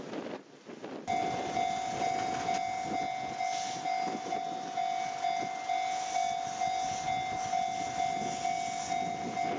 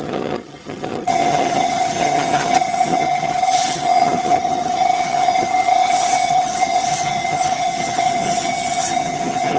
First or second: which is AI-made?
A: second